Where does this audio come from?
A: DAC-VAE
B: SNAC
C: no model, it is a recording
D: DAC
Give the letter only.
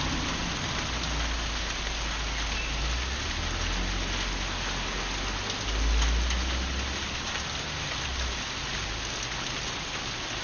C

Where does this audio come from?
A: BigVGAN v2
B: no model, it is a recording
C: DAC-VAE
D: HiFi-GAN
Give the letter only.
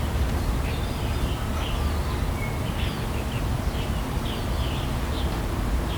B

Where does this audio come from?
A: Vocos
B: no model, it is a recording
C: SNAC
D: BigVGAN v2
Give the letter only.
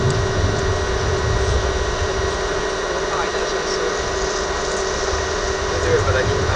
B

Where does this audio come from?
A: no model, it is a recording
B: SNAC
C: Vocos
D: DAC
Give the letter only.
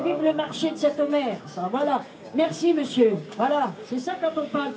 D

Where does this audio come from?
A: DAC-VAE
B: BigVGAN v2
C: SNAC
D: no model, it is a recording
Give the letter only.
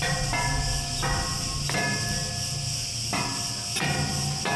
D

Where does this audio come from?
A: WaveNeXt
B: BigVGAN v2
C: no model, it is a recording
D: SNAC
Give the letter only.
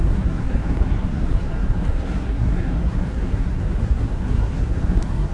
D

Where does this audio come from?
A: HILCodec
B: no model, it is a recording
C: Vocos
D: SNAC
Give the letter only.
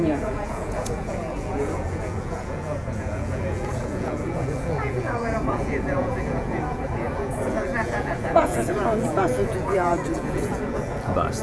C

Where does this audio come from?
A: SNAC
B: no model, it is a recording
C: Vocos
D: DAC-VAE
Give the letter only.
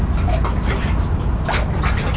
B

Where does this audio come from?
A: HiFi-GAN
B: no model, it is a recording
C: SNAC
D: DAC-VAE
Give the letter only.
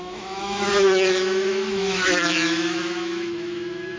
D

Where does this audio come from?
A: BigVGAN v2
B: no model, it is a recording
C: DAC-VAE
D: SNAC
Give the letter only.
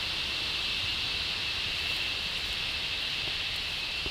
B